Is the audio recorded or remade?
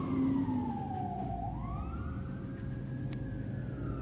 recorded